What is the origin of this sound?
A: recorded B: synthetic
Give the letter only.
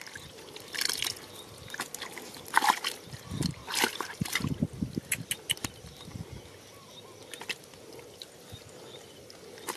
A